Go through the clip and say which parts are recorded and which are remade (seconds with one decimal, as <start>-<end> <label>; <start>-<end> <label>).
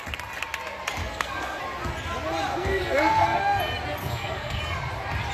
0.0-1.0 recorded; 1.0-1.6 remade; 1.6-2.5 recorded; 2.5-3.6 remade; 3.6-4.0 recorded; 4.0-4.6 remade; 4.6-5.3 recorded